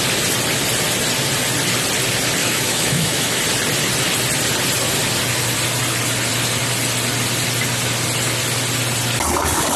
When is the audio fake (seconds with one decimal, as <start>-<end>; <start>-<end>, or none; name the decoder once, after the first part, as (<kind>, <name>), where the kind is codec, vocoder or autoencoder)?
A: 2.4-3.4 (autoencoder, DAC-VAE)